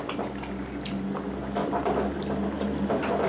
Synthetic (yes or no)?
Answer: no